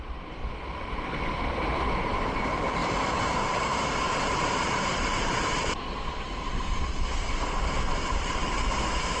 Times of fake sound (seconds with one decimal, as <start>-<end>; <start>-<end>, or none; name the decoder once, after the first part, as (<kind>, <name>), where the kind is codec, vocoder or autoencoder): 0.0-0.4 (vocoder, BigVGAN v2); 2.0-8.4